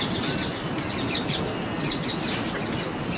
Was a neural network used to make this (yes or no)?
no